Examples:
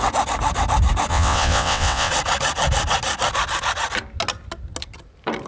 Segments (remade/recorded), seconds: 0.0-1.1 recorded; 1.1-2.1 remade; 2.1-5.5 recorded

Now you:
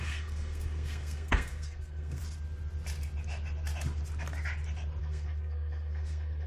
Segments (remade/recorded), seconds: 0.0-2.2 remade; 2.2-5.0 recorded; 5.0-6.5 remade

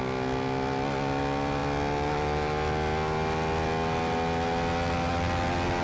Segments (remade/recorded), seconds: 0.0-5.8 recorded

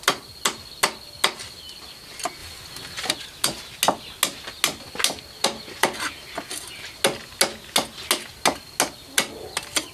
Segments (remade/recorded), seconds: 0.0-9.9 recorded

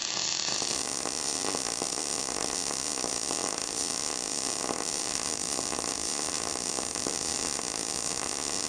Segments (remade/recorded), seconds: 0.0-8.7 recorded

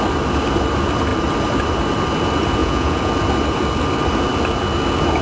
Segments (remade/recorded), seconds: 0.0-2.6 recorded; 2.6-3.1 remade; 3.1-5.2 recorded

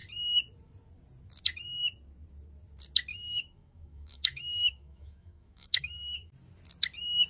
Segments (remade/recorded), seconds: 0.0-3.1 recorded; 3.1-6.3 remade; 6.3-7.3 recorded

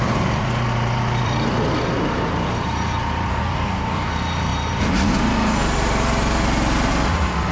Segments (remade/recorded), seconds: 0.0-3.3 recorded; 3.3-4.1 remade; 4.1-7.5 recorded